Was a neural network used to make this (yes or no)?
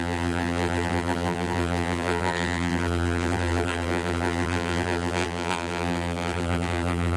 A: yes